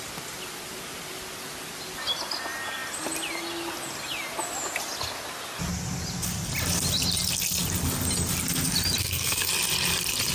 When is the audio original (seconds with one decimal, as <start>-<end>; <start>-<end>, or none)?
0.0-9.0; 9.5-10.3